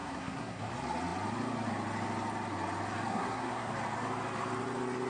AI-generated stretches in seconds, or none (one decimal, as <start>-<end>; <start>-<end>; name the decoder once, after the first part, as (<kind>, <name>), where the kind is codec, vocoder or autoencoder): 0.0-0.7 (codec, SNAC); 3.1-3.7